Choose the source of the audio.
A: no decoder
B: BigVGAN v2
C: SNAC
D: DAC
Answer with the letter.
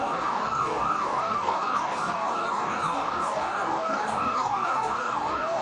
D